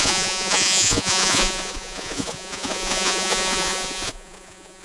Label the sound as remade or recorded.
remade